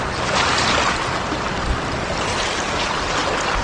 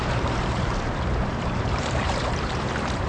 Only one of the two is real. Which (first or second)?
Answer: first